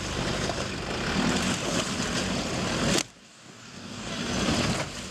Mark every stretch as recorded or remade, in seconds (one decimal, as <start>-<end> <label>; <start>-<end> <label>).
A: 0.0-3.2 recorded; 3.2-4.1 remade; 4.1-5.1 recorded